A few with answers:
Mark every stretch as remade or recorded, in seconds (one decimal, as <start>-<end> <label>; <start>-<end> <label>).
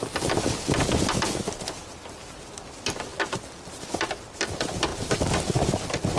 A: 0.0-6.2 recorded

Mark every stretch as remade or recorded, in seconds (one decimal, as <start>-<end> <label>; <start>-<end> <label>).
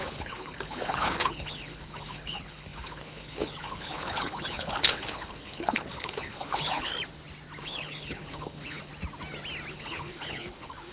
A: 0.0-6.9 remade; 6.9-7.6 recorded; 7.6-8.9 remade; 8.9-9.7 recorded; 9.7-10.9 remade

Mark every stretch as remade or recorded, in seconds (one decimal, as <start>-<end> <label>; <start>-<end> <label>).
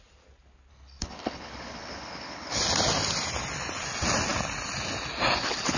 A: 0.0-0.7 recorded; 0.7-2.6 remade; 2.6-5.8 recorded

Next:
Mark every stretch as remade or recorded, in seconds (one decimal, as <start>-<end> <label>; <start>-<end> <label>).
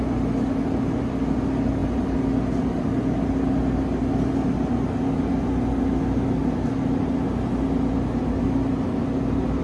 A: 0.0-9.6 recorded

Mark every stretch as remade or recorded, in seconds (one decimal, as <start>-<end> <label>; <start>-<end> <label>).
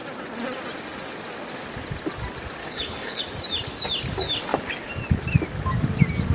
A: 0.0-2.6 recorded; 2.6-3.2 remade; 3.2-6.3 recorded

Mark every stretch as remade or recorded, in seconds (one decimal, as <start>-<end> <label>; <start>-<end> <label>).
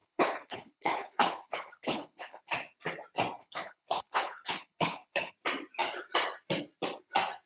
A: 0.0-2.4 remade; 2.4-3.4 recorded; 3.4-5.3 remade; 5.3-7.5 recorded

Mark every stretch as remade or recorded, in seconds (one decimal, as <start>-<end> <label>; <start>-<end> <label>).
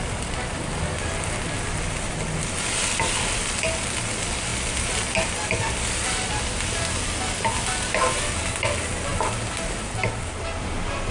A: 0.0-11.1 recorded